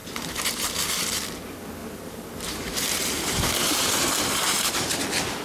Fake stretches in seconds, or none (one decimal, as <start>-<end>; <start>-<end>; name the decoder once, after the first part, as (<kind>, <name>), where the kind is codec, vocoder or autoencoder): 0.0-1.2 (vocoder, BigVGAN v2); 1.8-5.0